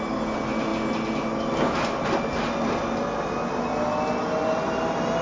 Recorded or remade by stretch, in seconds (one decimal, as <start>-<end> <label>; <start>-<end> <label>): 0.0-5.2 recorded